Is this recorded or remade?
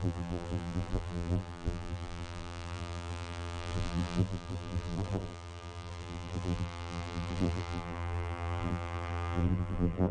remade